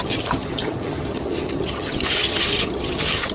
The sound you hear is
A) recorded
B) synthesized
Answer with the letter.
B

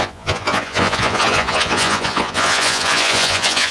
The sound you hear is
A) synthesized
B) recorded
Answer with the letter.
A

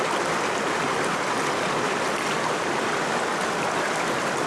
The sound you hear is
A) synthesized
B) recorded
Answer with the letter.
B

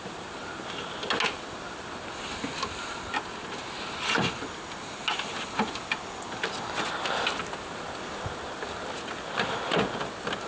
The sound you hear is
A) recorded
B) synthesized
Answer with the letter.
A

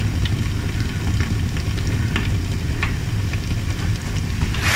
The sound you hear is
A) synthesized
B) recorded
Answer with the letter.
B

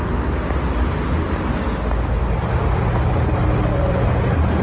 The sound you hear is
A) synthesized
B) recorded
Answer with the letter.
B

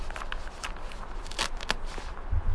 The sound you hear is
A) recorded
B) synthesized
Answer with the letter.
A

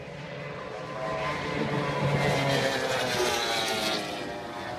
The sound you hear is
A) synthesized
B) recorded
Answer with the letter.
B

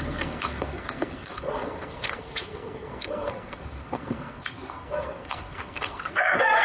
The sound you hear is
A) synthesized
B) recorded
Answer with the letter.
A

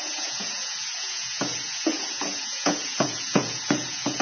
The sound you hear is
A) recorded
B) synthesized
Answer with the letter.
B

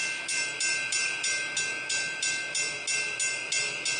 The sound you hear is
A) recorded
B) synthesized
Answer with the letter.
A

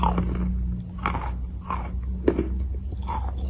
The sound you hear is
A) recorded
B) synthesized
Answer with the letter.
A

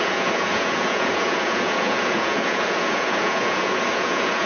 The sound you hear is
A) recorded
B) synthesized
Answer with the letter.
B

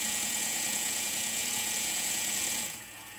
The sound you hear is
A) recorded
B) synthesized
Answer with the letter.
B